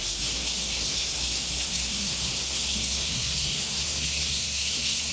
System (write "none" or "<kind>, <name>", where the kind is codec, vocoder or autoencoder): codec, SNAC